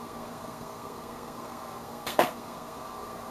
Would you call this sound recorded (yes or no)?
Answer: no